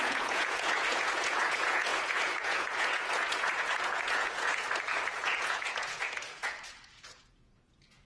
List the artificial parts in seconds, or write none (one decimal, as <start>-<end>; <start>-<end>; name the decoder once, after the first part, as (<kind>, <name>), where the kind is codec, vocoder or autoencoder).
0.0-8.0 (vocoder, Vocos)